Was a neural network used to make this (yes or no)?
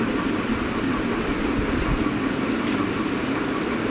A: yes